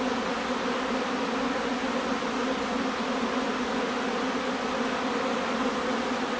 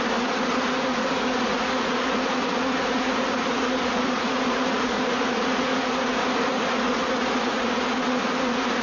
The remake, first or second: second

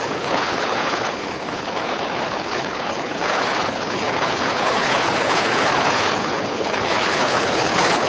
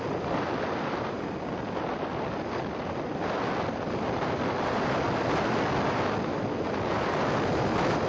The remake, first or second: first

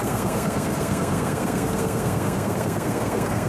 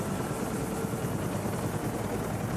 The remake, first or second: first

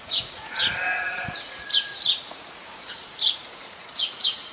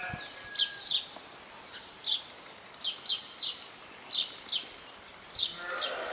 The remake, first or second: first